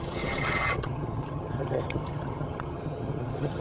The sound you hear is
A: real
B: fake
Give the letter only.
B